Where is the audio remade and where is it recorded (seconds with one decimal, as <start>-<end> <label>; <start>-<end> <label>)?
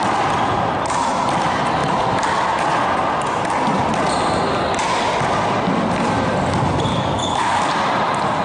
0.0-6.9 recorded; 6.9-7.7 remade; 7.7-8.4 recorded